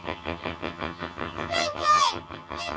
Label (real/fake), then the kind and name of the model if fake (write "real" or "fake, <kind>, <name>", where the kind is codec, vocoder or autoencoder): fake, vocoder, HiFi-GAN